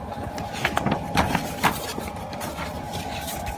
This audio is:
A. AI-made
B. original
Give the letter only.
A